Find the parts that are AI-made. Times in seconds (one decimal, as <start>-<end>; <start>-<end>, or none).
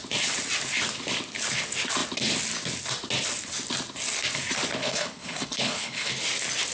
4.8-6.1